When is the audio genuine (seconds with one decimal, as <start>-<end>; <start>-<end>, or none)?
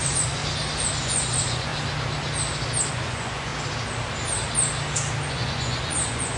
0.4-1.0; 1.7-2.9; 3.5-5.3